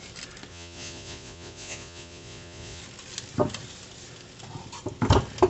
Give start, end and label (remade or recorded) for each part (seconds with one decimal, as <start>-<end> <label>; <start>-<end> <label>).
0.0-0.5 recorded; 0.5-2.8 remade; 2.8-5.5 recorded

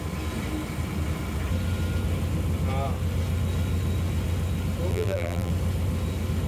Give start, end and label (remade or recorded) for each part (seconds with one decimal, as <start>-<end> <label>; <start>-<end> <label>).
0.0-4.9 recorded; 4.9-5.5 remade; 5.5-6.5 recorded

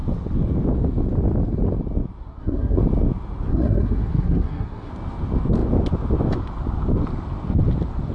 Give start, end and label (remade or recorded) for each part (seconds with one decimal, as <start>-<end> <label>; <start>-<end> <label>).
0.0-2.2 recorded; 2.2-2.8 remade; 2.8-3.5 recorded; 3.5-4.9 remade; 4.9-8.1 recorded

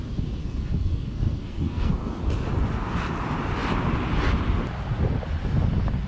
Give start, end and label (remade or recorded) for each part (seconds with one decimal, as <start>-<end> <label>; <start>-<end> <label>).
0.0-0.4 recorded; 0.4-2.2 remade; 2.2-6.1 recorded

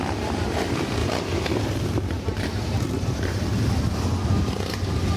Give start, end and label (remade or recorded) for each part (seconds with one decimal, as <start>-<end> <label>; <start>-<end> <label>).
0.0-1.0 recorded; 1.0-3.8 remade; 3.8-5.2 recorded